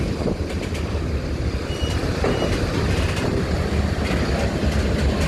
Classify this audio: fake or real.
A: real